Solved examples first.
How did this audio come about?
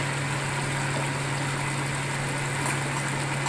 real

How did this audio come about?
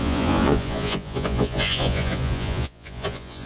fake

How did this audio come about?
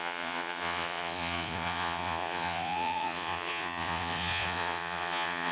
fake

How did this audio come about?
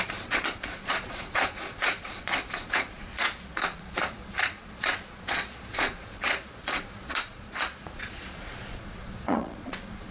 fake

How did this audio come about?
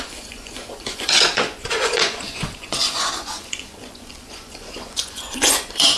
fake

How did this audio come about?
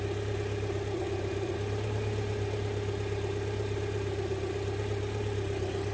real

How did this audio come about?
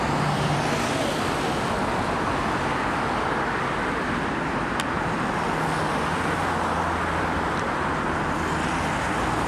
real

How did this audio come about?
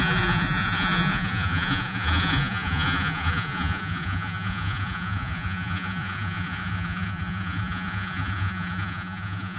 fake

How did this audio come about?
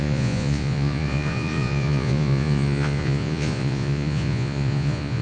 fake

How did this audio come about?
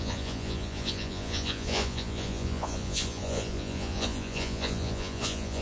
fake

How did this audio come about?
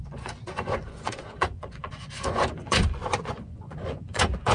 fake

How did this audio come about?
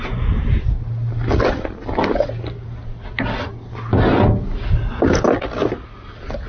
real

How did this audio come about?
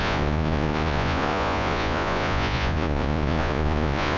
fake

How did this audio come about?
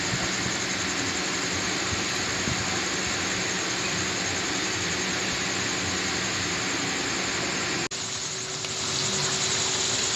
real